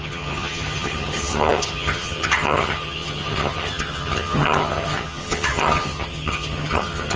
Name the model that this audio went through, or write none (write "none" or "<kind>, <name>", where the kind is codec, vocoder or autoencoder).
vocoder, HiFi-GAN